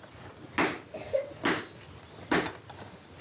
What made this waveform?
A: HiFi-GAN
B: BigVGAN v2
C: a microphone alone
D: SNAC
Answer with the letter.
C